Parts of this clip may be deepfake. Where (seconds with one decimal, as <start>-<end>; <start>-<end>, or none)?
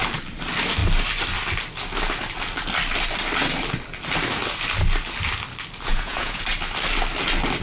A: 5.9-6.4